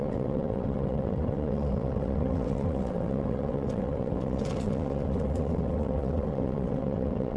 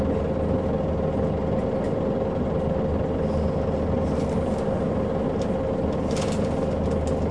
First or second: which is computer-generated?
first